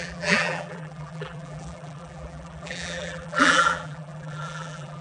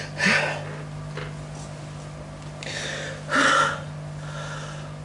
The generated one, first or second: first